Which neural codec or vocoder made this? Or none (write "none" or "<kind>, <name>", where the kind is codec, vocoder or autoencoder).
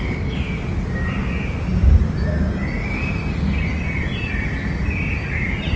none